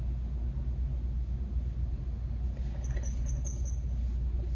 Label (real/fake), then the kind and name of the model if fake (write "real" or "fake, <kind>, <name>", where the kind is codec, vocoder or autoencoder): real